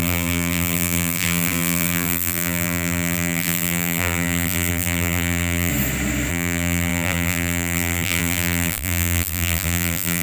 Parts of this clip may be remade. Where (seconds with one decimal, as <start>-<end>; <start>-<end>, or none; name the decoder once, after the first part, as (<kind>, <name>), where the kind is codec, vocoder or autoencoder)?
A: 0.0-5.7 (vocoder, BigVGAN v2); 6.3-10.2